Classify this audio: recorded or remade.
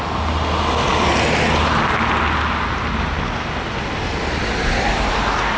recorded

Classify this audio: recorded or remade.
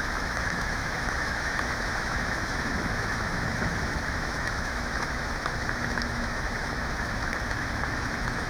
remade